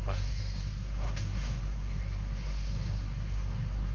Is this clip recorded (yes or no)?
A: no